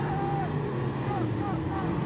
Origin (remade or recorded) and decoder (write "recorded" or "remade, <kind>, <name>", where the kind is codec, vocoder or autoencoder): recorded